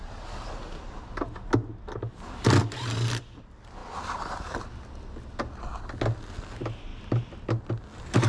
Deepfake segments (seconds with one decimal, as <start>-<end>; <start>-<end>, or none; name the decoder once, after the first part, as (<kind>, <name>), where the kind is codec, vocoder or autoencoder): none